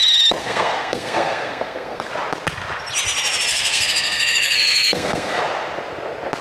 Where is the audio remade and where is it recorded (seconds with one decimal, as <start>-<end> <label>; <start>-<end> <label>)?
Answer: 0.0-0.4 recorded; 0.4-2.1 remade; 2.1-3.5 recorded; 3.5-5.4 remade; 5.4-6.4 recorded